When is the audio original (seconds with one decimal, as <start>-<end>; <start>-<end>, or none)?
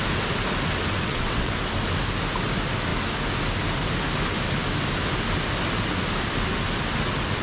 0.0-0.9; 1.5-7.4